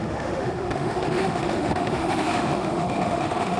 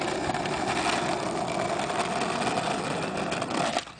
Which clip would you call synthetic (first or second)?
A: first